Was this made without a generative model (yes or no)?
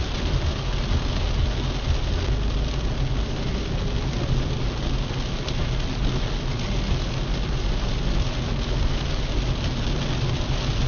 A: yes